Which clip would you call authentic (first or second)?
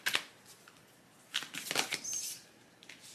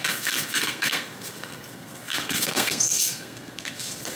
first